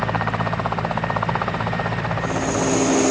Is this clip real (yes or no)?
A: yes